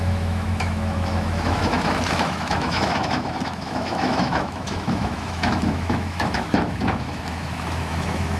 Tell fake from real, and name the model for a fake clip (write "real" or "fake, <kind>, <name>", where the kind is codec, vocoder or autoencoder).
fake, autoencoder, DAC-VAE